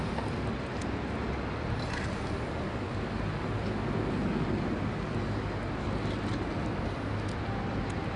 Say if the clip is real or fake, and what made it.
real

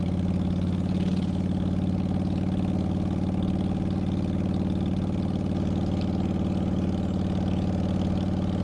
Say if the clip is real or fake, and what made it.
real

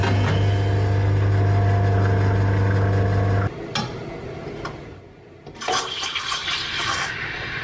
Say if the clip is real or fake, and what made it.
real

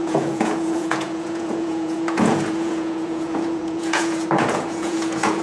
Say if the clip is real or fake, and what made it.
fake, vocoder, Vocos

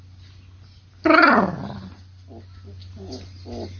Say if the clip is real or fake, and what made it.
real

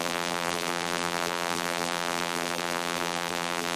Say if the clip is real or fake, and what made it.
fake, vocoder, BigVGAN v2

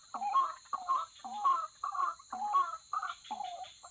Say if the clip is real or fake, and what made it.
real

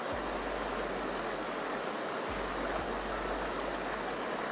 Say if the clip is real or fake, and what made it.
real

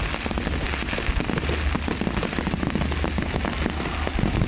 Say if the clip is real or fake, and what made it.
real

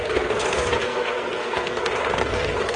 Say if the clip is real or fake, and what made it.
fake, codec, SNAC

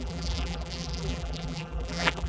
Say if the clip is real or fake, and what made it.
fake, vocoder, BigVGAN v2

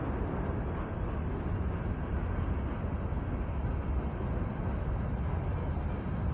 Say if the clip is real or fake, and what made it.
real